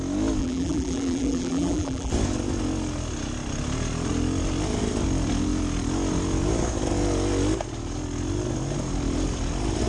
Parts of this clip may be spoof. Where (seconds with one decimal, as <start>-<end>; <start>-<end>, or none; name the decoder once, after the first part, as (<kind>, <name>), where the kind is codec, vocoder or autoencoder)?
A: 0.4-2.1 (vocoder, BigVGAN v2)